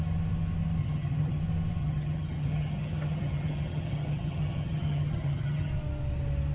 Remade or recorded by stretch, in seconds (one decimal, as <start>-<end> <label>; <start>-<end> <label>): 0.0-0.8 recorded; 0.8-1.4 remade; 1.4-1.8 recorded; 1.8-5.7 remade; 5.7-6.5 recorded